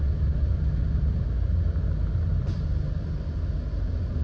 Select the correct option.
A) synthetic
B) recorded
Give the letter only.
B